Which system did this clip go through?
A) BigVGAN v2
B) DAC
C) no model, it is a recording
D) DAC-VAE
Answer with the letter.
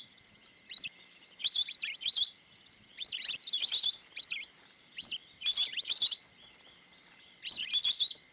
C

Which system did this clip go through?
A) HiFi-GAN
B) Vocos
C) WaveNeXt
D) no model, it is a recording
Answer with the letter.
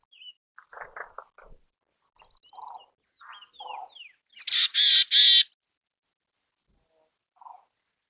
D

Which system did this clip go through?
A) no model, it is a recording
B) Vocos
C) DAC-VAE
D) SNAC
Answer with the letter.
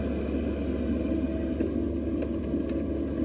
A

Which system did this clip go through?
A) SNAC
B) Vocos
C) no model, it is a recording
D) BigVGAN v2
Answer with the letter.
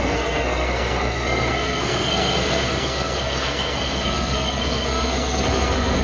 A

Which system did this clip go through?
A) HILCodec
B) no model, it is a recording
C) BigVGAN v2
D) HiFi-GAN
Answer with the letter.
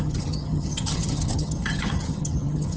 D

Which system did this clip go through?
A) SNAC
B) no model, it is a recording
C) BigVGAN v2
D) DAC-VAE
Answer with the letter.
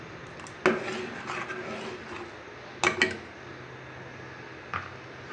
B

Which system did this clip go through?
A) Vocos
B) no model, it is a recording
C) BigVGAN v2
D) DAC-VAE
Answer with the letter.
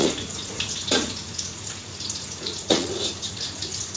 A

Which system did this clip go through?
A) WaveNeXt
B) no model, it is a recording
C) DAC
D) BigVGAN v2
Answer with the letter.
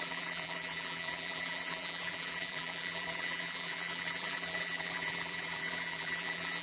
D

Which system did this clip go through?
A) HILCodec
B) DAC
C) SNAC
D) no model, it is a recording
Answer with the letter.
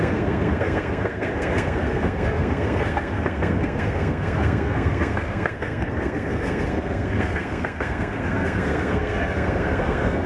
C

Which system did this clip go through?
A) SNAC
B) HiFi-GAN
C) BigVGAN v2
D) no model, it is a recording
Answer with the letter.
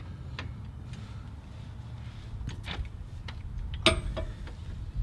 D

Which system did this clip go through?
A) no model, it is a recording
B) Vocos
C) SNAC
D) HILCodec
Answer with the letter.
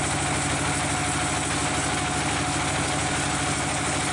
A